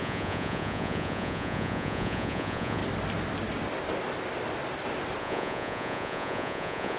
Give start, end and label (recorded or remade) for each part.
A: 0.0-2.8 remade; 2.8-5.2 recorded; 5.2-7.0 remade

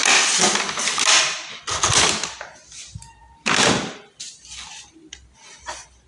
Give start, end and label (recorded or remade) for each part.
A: 0.0-6.1 recorded

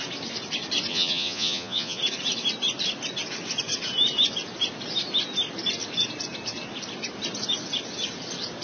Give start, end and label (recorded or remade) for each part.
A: 0.0-0.9 recorded; 0.9-2.0 remade; 2.0-8.6 recorded

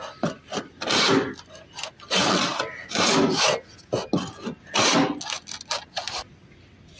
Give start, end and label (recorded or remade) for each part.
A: 0.0-7.0 recorded

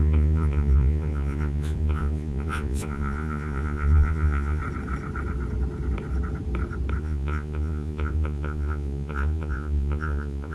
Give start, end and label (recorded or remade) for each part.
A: 0.0-4.6 remade; 4.6-7.0 recorded; 7.0-10.5 remade

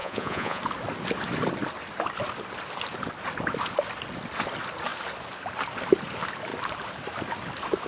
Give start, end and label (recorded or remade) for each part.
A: 0.0-0.6 remade; 0.6-7.9 recorded

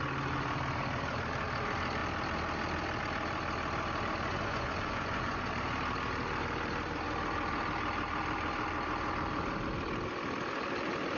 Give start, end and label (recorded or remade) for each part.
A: 0.0-4.3 recorded; 4.3-5.5 remade; 5.5-11.2 recorded